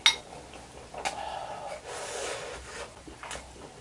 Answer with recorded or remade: recorded